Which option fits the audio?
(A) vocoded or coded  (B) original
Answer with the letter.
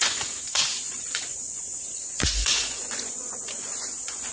A